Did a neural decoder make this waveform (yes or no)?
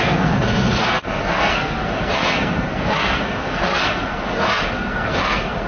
yes